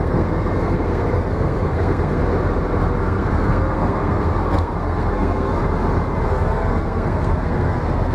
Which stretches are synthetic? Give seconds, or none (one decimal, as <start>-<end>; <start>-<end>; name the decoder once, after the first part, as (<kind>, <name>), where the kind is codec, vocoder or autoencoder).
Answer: 0.0-2.2 (codec, SNAC); 3.0-5.6; 6.3-8.1